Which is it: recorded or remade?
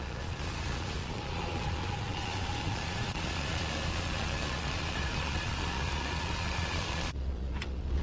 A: remade